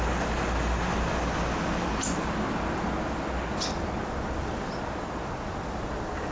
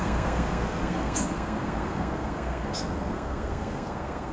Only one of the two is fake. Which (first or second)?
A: second